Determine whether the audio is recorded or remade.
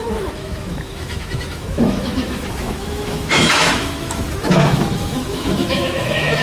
remade